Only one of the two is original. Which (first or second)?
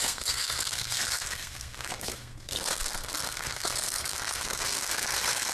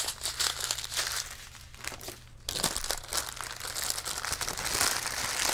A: second